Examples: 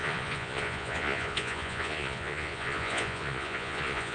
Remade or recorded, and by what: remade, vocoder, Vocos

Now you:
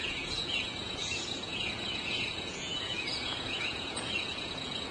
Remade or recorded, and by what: remade, vocoder, Vocos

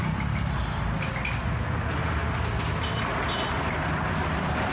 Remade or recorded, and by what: recorded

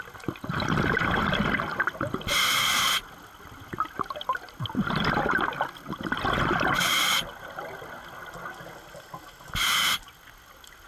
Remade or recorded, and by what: recorded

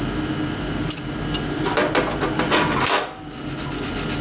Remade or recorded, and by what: recorded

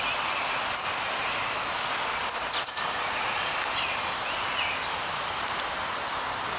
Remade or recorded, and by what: recorded